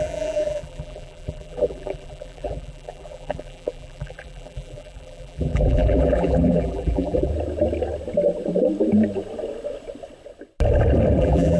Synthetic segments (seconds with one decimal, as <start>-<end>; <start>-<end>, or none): 0.0-7.3; 11.2-11.6